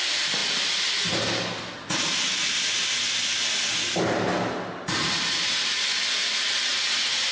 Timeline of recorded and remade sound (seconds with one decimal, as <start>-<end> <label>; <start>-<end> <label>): 0.0-7.3 recorded